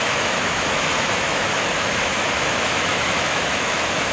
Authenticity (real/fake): fake